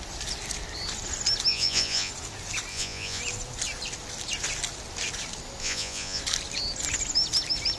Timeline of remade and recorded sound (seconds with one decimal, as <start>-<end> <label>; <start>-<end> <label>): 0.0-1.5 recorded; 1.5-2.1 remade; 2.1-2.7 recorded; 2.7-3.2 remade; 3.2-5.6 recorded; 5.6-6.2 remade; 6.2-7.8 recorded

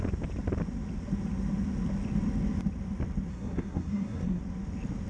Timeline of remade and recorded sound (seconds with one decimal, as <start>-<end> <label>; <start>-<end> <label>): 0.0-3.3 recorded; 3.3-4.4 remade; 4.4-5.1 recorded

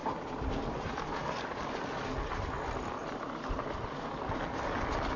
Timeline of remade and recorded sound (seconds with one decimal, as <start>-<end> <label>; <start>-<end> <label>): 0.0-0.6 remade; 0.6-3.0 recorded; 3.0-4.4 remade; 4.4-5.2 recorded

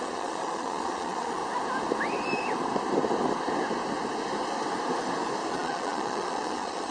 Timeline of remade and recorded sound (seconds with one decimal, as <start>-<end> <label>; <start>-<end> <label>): 0.0-1.4 remade; 1.4-5.5 recorded; 5.5-6.9 remade

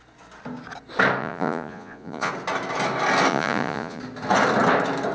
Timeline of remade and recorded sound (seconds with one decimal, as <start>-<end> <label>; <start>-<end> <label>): 0.0-1.2 recorded; 1.2-2.3 remade; 2.3-3.3 recorded; 3.3-4.0 remade; 4.0-5.1 recorded

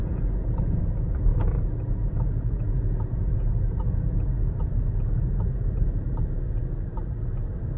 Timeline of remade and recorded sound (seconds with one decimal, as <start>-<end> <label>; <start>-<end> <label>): 0.0-0.8 remade; 0.8-1.3 recorded; 1.3-5.6 remade; 5.6-7.8 recorded

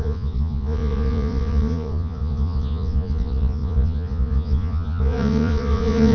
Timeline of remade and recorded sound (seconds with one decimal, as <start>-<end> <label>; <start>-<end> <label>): 0.0-6.1 remade

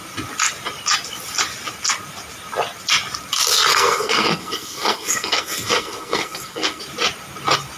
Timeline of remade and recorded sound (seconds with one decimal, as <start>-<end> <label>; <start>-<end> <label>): 0.0-3.7 recorded; 3.7-6.8 remade; 6.8-7.8 recorded